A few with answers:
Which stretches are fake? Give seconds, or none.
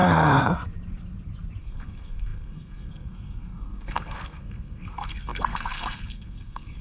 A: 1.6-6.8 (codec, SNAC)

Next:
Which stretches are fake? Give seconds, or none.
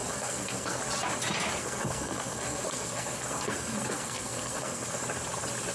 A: 0.0-0.8 (codec, SNAC); 1.6-5.0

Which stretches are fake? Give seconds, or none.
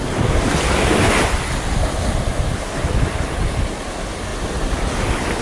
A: none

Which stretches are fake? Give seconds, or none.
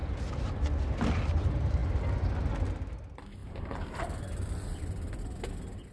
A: none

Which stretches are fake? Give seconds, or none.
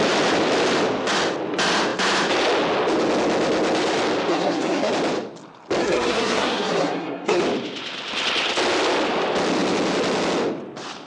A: 4.3-4.9 (codec, SNAC); 5.8-7.4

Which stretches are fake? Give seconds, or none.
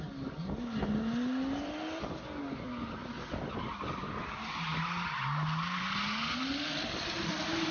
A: none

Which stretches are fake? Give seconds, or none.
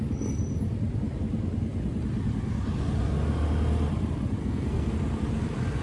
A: 4.4-4.9 (codec, SNAC)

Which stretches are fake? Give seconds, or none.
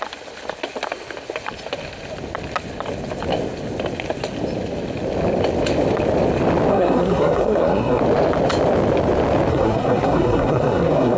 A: 6.7-8.0 (codec, SNAC); 9.5-11.2